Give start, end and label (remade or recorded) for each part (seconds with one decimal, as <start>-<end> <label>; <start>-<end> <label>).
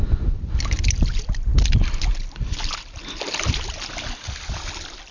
0.0-5.1 recorded